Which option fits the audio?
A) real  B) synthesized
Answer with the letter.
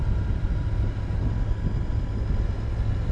A